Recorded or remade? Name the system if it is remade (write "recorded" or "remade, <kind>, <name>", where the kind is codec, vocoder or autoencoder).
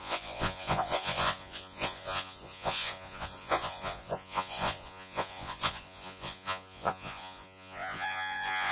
remade, vocoder, Vocos